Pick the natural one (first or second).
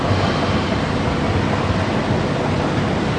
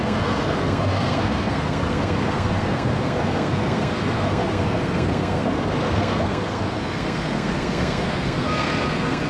first